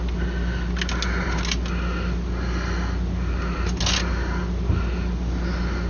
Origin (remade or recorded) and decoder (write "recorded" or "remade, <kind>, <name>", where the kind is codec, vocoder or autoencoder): recorded